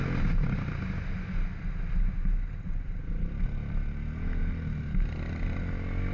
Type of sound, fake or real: real